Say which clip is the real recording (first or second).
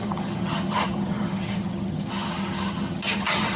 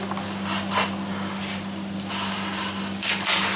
second